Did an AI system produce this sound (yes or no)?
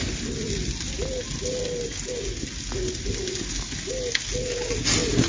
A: no